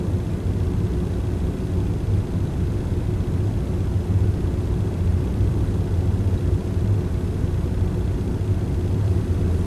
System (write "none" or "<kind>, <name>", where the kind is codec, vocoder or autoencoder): none